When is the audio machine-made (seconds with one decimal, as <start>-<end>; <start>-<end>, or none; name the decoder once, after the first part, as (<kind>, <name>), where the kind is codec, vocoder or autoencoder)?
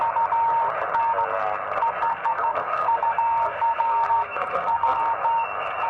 2.1-5.0 (codec, SNAC)